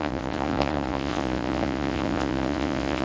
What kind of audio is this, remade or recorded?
remade